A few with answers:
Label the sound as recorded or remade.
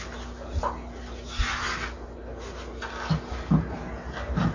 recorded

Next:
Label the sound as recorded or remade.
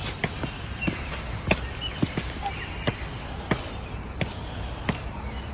recorded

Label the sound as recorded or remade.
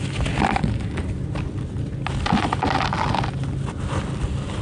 recorded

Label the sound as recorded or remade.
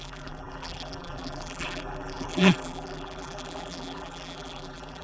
remade